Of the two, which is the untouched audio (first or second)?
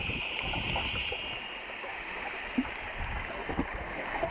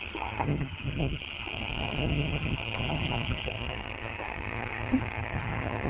first